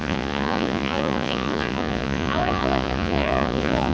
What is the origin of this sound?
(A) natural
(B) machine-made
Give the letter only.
B